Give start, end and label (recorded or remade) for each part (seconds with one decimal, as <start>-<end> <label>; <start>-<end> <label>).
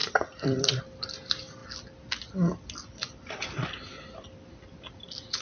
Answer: 0.0-1.6 remade; 1.6-4.8 recorded; 4.8-5.4 remade